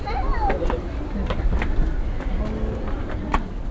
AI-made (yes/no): no